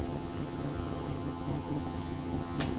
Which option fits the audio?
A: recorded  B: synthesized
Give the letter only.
B